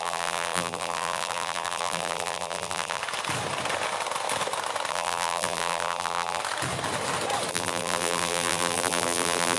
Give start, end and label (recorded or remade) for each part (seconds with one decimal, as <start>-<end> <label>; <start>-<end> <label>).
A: 0.0-3.0 remade; 3.0-4.9 recorded; 4.9-6.4 remade; 6.4-7.5 recorded; 7.5-9.6 remade